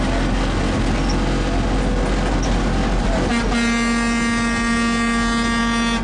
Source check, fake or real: real